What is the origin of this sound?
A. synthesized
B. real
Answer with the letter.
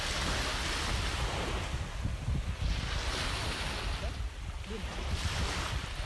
B